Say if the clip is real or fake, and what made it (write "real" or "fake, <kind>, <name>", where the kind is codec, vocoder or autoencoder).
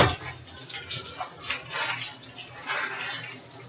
real